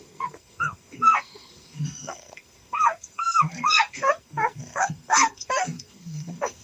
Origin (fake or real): fake